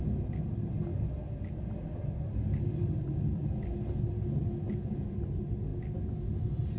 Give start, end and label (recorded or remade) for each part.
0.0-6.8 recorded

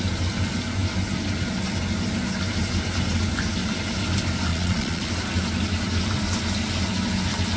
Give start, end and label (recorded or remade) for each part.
0.0-4.5 recorded; 4.5-5.1 remade; 5.1-7.6 recorded

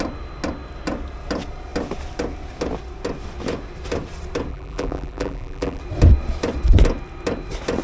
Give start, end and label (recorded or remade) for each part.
0.0-4.5 recorded; 4.5-5.8 remade; 5.8-7.8 recorded

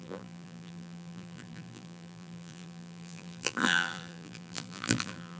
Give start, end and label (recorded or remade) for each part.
0.0-5.4 remade